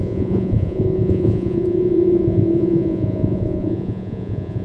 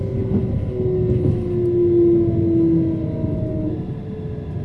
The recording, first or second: second